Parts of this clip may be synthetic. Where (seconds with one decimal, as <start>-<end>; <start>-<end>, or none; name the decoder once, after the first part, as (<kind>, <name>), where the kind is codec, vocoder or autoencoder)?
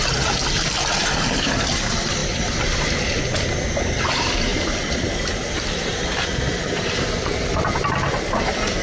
1.0-1.6 (vocoder, BigVGAN v2); 2.2-3.0; 4.5-6.2